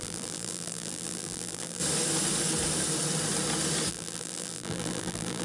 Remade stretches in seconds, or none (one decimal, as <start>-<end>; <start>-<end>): 0.0-1.8; 3.9-5.4